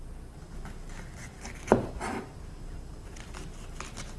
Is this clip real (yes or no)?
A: yes